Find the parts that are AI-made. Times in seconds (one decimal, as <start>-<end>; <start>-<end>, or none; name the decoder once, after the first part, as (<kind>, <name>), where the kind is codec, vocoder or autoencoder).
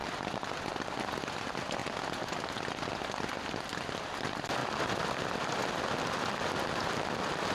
1.0-1.8 (vocoder, BigVGAN v2); 2.5-4.6; 6.7-7.5